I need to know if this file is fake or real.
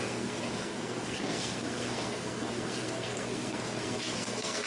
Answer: fake